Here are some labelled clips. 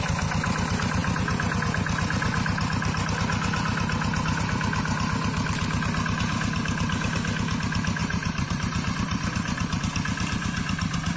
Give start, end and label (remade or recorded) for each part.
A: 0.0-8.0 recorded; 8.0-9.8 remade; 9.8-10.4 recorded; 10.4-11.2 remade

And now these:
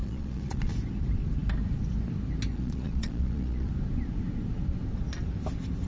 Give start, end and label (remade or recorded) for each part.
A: 0.0-0.7 remade; 0.7-2.5 recorded; 2.5-3.7 remade; 3.7-5.9 recorded

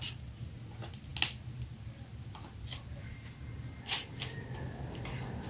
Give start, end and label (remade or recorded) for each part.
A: 0.0-5.5 recorded